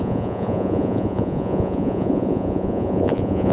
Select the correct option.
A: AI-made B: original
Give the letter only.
A